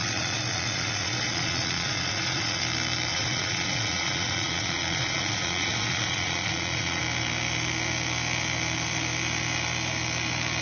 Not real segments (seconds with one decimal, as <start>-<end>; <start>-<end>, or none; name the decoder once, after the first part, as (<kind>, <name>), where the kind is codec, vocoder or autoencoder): 0.0-2.6 (vocoder, Vocos); 3.1-7.0